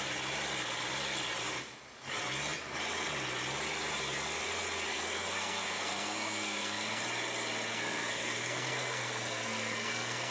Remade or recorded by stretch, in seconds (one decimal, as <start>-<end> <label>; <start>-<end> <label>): 0.0-4.9 recorded; 4.9-7.0 remade; 7.0-7.7 recorded; 7.7-10.3 remade